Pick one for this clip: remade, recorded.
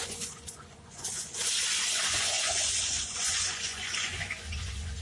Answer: remade